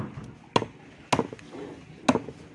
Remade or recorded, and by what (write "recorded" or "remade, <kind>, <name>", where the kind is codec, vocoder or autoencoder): recorded